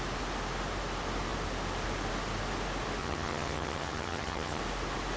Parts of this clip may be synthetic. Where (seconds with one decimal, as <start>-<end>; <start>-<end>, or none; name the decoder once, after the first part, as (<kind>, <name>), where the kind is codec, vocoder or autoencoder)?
3.0-4.6 (vocoder, HiFi-GAN)